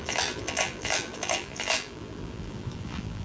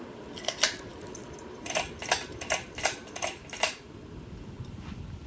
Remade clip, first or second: first